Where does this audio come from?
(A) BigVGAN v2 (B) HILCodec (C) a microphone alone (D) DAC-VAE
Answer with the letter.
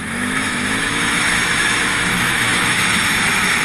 D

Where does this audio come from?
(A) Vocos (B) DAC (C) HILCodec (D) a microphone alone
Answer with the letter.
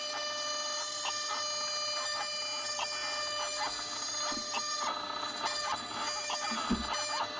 D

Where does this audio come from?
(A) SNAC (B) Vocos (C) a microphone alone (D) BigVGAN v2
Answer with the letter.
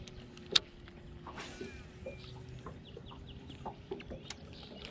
C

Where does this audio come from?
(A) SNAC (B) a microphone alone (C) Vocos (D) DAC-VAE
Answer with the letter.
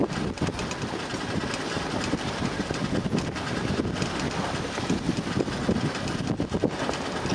B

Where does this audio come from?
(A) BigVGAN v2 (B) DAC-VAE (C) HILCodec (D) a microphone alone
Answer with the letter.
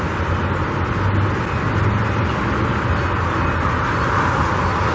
D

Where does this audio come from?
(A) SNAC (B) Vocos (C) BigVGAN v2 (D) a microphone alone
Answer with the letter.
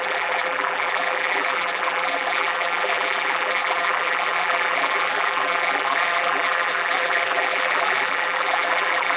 C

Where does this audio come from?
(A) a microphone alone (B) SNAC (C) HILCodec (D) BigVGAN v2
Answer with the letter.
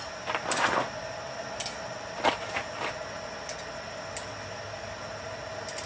A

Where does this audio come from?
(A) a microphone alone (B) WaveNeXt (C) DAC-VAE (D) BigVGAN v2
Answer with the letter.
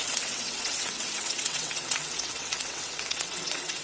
B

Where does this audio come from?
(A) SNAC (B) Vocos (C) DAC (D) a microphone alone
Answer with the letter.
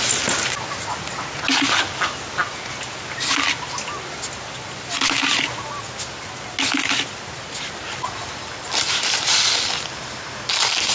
D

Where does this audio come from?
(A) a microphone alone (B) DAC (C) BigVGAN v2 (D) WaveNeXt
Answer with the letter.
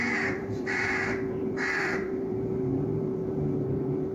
C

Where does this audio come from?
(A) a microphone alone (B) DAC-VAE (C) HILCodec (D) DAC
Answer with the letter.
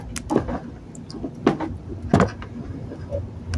A